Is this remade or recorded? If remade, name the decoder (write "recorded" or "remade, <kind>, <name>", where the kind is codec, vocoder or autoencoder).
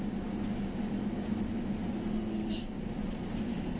recorded